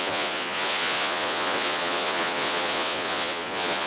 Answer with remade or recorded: remade